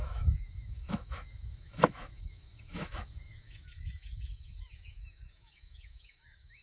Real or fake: fake